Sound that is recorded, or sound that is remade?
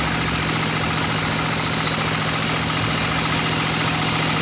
recorded